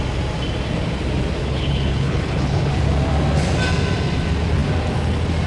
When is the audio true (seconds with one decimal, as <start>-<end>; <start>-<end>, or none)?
0.0-1.4; 2.7-5.5